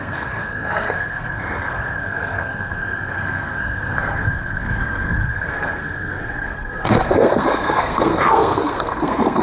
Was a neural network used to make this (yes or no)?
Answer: yes